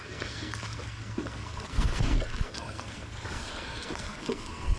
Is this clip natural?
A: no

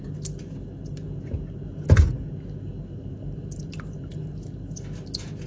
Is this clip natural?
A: yes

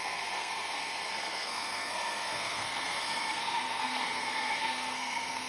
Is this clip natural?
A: no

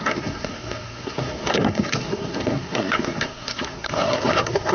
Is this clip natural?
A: no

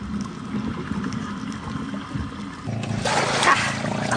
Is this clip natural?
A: yes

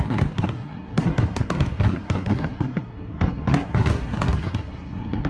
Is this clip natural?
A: no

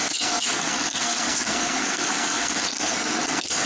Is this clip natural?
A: no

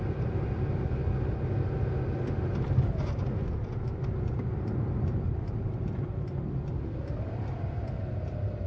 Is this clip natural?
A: yes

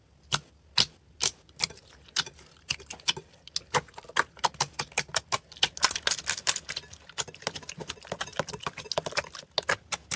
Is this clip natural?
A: yes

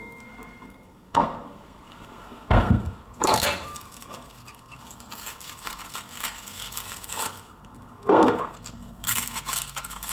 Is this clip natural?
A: no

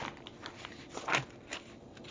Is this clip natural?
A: yes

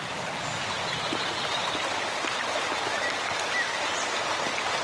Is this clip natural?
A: yes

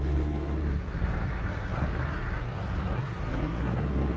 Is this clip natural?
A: no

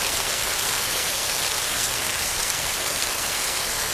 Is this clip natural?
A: no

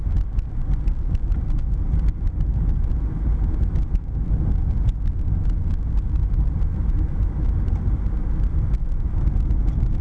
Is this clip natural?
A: yes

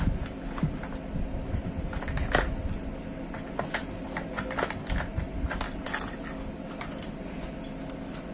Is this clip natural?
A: yes